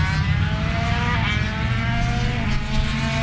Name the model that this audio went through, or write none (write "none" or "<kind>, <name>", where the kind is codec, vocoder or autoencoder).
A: none